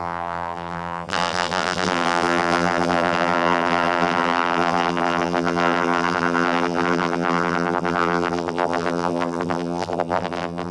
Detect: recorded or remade remade